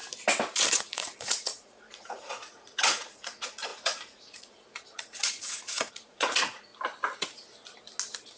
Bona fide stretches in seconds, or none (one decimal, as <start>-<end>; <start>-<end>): 0.0-0.7; 6.7-8.4